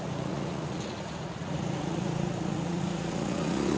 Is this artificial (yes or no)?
yes